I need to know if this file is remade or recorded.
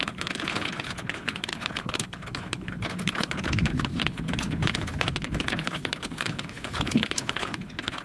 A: remade